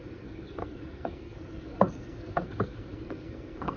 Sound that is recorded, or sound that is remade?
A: remade